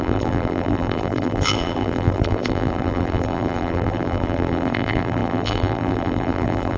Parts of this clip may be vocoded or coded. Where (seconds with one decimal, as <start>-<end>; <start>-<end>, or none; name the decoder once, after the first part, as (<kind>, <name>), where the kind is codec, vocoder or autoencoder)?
0.0-6.8 (vocoder, BigVGAN v2)